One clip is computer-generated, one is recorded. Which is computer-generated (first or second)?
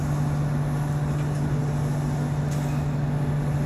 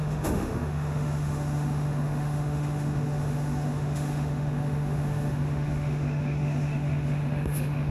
second